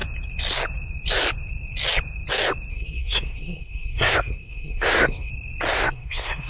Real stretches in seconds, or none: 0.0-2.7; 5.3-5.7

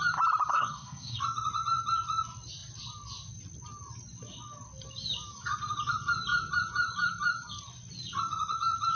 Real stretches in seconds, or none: 0.0-0.5; 1.2-9.0

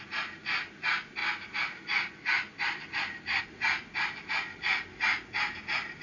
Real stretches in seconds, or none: 0.0-6.0

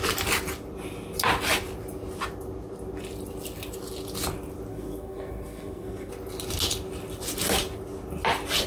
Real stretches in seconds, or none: 0.0-4.7; 6.1-8.7

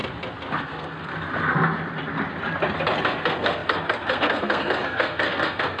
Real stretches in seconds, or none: 0.0-0.6; 1.1-3.0

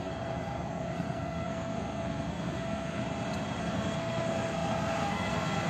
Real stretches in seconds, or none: 3.0-3.6